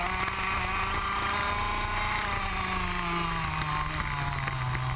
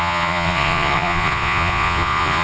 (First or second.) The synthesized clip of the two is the second